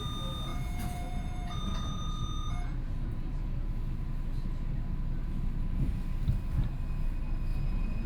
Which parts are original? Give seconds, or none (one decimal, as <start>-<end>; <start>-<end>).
0.0-0.5; 3.7-7.5